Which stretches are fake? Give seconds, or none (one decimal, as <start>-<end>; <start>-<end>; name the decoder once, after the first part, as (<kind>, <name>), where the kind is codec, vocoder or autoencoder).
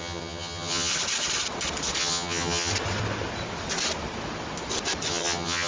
0.0-0.9 (vocoder, HiFi-GAN); 2.0-2.7; 5.1-5.7